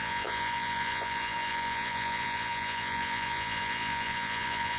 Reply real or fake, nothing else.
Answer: fake